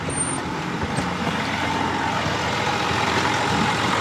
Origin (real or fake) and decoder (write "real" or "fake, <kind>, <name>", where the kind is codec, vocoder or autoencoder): real